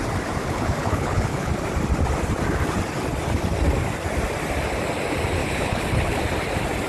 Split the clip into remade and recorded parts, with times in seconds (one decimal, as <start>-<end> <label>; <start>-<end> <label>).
0.0-0.4 recorded; 0.4-1.5 remade; 1.5-5.4 recorded; 5.4-6.2 remade; 6.2-6.9 recorded